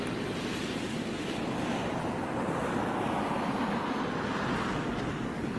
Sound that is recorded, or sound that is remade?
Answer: recorded